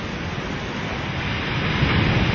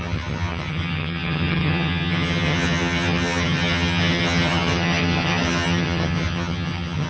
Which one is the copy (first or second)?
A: second